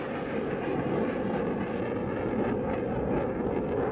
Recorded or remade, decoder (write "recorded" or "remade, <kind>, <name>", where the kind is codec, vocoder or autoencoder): recorded